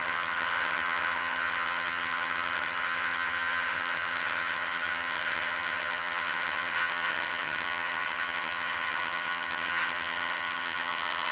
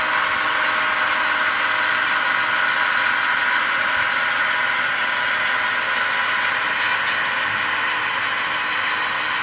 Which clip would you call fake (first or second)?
first